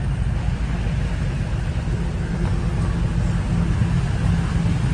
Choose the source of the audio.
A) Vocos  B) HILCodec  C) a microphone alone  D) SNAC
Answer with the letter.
C